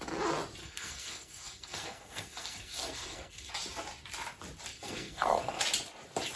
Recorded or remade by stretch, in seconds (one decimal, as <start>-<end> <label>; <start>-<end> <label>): 0.0-0.6 recorded; 0.6-3.5 remade; 3.5-4.7 recorded; 4.7-5.6 remade; 5.6-6.4 recorded